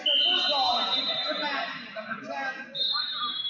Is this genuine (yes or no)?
yes